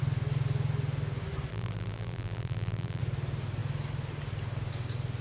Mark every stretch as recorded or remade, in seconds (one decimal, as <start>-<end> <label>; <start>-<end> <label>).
0.0-1.5 recorded; 1.5-3.0 remade; 3.0-5.2 recorded